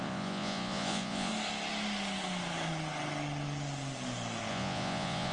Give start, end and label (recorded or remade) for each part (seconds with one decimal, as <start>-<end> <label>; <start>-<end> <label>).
0.0-1.3 remade; 1.3-4.5 recorded; 4.5-5.3 remade